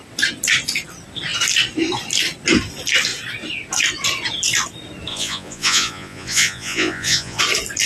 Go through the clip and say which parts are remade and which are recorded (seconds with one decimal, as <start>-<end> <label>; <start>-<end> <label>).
0.0-5.1 recorded; 5.1-7.4 remade; 7.4-7.9 recorded